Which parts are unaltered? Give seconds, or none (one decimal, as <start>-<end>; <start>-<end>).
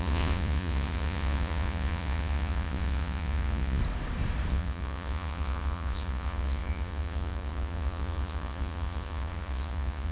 3.8-4.5